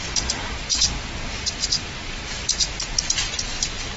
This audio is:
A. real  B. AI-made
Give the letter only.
B